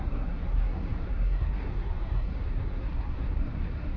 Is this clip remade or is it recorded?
remade